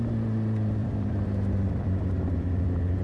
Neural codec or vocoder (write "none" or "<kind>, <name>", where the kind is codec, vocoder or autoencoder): vocoder, BigVGAN v2